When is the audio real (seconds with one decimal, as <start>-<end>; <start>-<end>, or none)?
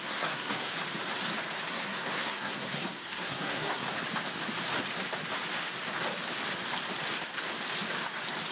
0.7-1.7; 3.8-8.5